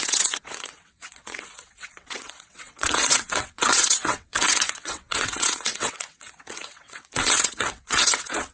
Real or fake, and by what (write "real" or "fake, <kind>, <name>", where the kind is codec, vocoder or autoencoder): fake, vocoder, WaveNeXt